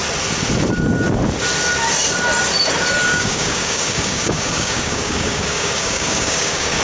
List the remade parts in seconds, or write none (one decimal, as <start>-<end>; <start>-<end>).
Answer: 3.1-6.8